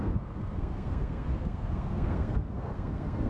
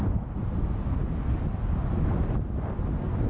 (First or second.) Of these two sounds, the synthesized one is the first